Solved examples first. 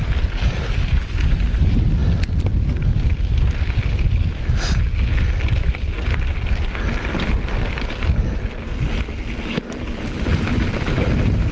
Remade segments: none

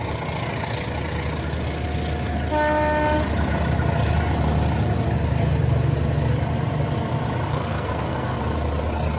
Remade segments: 7.5-8.4 (codec, SNAC)

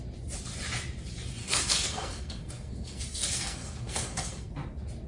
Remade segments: 1.4-4.5 (codec, SNAC)

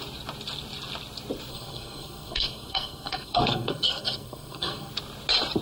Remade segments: 1.5-4.9 (codec, SNAC)

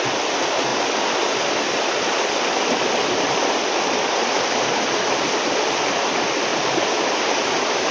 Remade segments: none